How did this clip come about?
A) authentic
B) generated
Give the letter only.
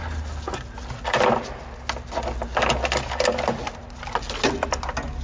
A